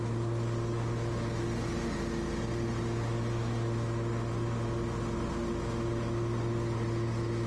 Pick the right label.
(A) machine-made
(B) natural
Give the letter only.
B